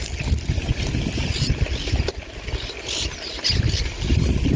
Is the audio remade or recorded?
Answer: recorded